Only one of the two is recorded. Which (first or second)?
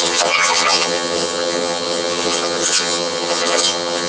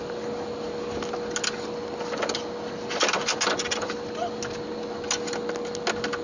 second